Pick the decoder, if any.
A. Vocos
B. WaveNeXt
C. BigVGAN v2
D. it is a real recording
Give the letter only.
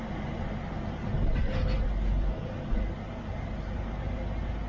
D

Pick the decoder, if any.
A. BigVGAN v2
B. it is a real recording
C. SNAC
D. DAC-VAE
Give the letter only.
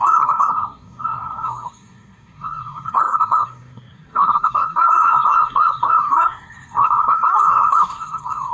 C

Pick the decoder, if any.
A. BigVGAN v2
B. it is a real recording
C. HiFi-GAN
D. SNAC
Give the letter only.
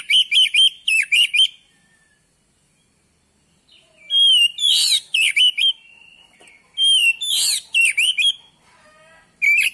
B